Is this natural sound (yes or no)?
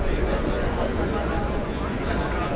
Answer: no